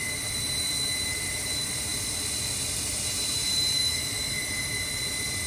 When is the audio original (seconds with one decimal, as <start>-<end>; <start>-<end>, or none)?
1.9-2.8